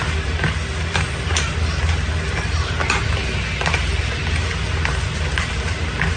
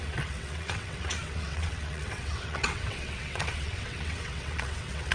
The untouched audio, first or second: first